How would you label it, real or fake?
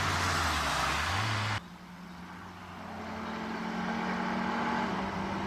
real